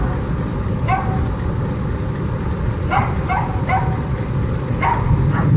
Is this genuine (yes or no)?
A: yes